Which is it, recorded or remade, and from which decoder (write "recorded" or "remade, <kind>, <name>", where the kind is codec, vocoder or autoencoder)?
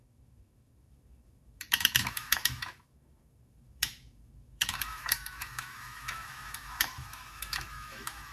remade, autoencoder, DAC-VAE